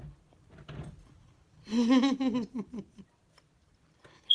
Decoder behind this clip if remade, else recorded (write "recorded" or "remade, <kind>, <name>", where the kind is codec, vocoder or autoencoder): recorded